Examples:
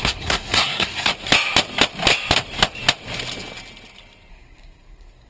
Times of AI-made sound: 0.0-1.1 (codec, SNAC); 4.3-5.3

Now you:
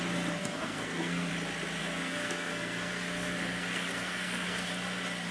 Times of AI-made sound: 0.4-1.3 (codec, SNAC); 1.8-4.7